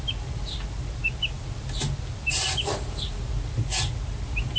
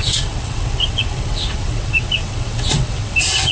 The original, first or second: first